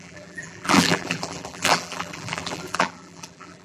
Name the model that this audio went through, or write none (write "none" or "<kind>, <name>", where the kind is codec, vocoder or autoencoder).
vocoder, BigVGAN v2